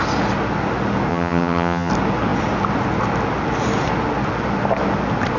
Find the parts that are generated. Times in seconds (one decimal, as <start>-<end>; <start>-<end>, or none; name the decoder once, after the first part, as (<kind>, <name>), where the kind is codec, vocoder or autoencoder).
1.1-1.9 (vocoder, HiFi-GAN)